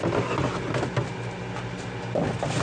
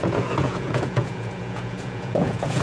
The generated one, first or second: second